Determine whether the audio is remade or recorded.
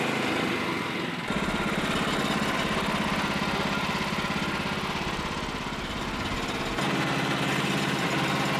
recorded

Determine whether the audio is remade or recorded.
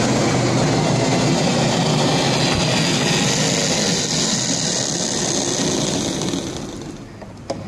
recorded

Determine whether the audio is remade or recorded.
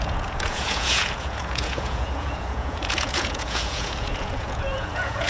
remade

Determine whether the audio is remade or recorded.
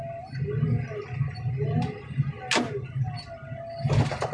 recorded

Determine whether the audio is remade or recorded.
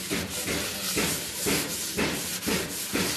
recorded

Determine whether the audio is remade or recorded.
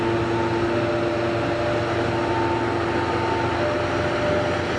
recorded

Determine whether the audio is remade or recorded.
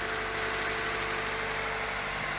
recorded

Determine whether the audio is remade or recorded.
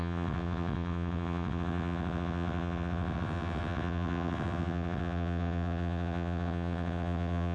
remade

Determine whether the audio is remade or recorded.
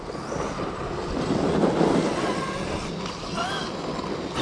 recorded